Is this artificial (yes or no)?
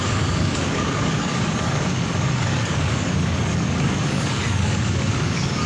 yes